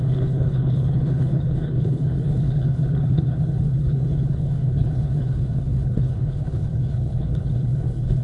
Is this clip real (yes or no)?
no